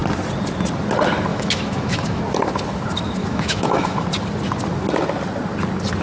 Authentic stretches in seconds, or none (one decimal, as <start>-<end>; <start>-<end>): 0.0-1.3; 2.2-3.2; 4.0-6.0